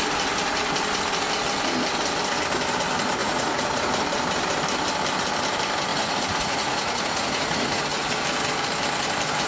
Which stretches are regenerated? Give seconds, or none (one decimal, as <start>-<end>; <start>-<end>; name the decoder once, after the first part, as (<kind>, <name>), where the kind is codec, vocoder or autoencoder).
3.2-3.9 (vocoder, Vocos); 5.9-8.1